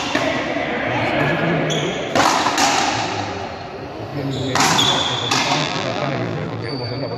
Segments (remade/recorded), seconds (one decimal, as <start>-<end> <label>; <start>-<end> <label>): 0.0-5.6 recorded; 5.6-6.7 remade; 6.7-7.2 recorded